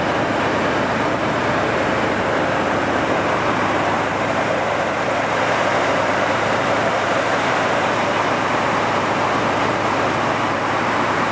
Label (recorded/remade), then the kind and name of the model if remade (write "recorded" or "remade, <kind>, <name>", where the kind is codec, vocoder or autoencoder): remade, vocoder, BigVGAN v2